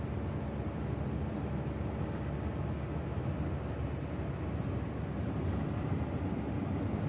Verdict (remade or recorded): recorded